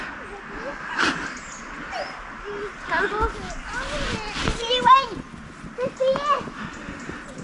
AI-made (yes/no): no